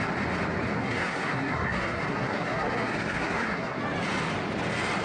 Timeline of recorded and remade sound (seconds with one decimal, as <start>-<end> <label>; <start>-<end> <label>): 0.0-0.8 recorded; 0.8-3.8 remade; 3.8-5.0 recorded